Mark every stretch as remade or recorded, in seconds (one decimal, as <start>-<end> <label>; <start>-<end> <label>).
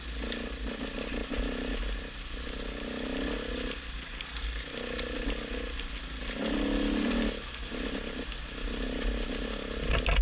0.0-10.2 recorded